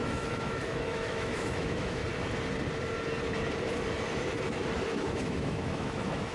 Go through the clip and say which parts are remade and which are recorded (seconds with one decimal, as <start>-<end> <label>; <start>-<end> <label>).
0.0-2.0 remade; 2.0-5.0 recorded; 5.0-6.3 remade